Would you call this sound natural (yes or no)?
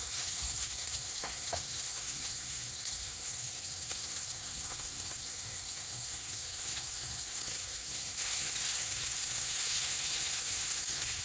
no